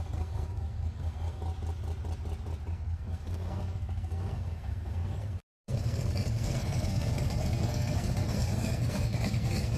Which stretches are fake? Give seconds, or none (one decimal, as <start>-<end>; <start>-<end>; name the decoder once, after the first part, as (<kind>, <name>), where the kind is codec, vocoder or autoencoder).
0.0-1.4 (codec, SNAC); 2.7-9.8